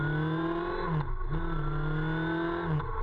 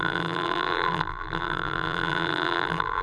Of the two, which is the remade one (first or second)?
second